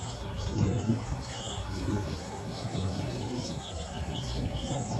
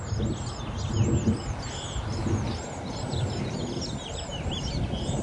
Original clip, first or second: second